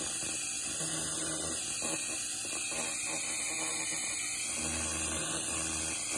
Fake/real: real